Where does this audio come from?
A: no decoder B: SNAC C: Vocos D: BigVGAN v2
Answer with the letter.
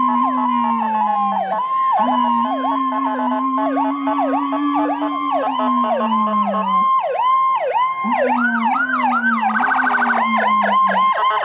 A